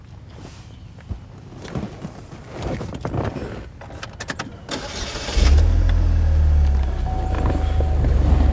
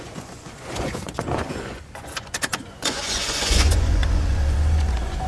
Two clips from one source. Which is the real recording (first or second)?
first